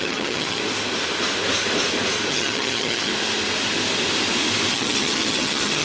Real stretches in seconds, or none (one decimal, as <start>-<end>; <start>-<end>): 0.6-2.3; 3.1-4.7